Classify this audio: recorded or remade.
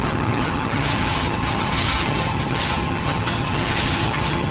remade